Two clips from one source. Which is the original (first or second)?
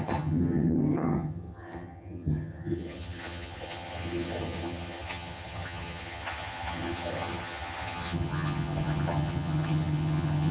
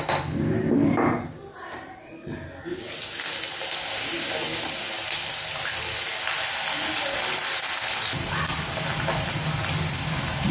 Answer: second